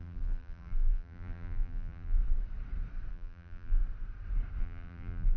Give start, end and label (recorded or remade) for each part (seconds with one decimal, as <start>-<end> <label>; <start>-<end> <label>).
0.0-2.2 remade; 2.2-3.1 recorded; 3.1-3.8 remade; 3.8-4.6 recorded; 4.6-5.4 remade